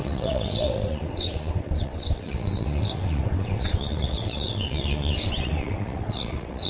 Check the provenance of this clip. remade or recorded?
remade